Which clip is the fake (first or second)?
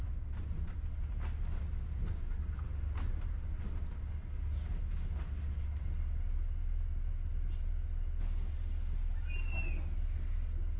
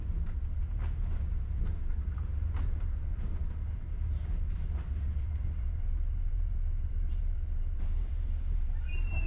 second